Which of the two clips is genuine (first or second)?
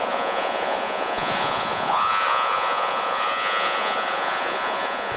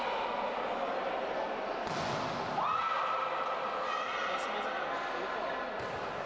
second